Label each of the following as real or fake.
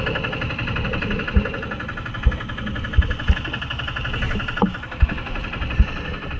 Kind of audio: real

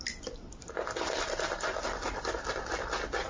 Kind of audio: real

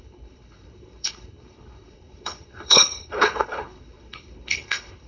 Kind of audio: fake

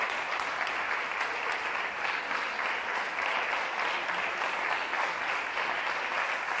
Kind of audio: real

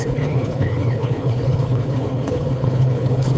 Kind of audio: fake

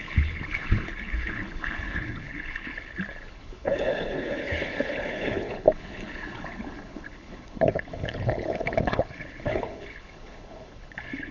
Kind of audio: fake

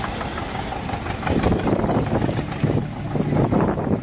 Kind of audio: real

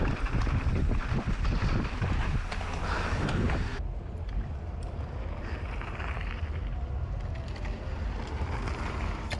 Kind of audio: real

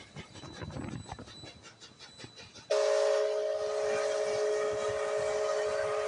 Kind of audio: real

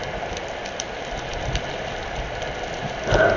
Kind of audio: real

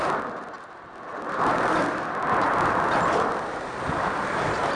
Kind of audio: real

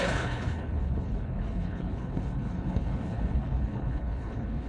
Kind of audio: fake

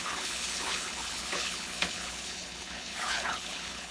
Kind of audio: fake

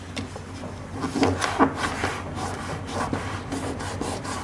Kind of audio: real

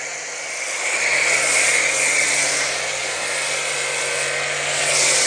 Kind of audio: real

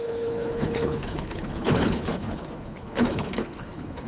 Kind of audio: fake